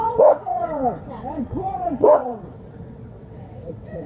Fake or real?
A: fake